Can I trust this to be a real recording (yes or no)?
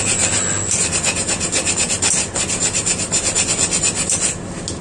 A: yes